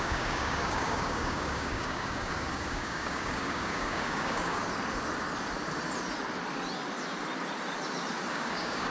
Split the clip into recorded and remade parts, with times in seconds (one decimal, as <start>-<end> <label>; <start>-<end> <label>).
0.0-4.6 remade; 4.6-8.3 recorded; 8.3-8.9 remade